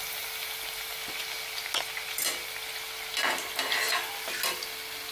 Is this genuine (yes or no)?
yes